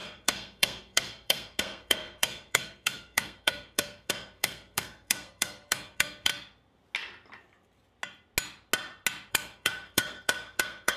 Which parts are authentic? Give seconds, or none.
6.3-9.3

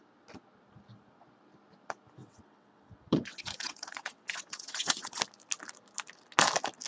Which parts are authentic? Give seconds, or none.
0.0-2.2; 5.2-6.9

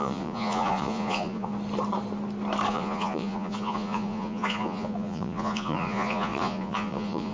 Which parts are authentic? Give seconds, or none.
1.5-2.7